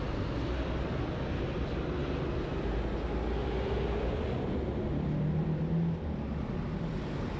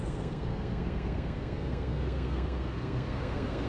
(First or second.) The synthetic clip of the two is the second